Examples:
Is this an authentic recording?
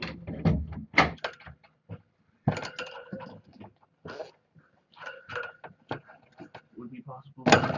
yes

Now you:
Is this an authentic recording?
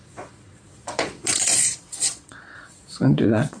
no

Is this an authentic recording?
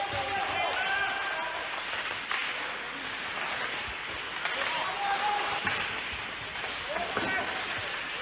yes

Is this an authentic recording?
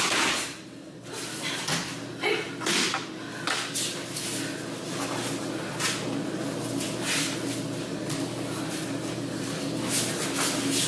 yes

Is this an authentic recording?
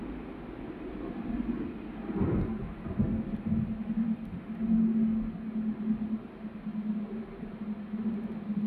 yes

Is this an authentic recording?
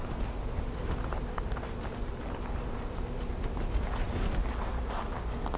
yes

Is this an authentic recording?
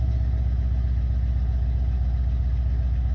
yes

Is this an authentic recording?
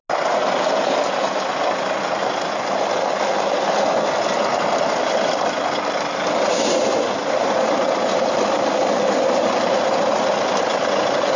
yes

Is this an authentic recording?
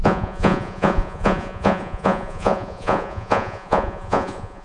no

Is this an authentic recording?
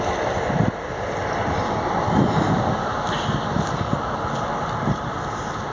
yes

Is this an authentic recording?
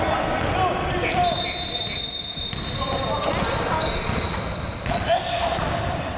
yes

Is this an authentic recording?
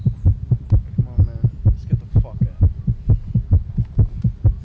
yes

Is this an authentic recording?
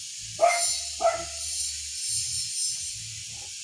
yes